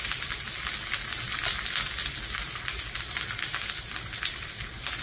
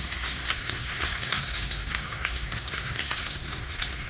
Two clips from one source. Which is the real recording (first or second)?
first